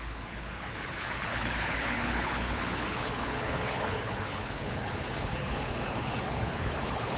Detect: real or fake fake